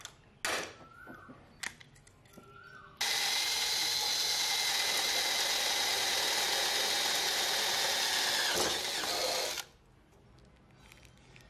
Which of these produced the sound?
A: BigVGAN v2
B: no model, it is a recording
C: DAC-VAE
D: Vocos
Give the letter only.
B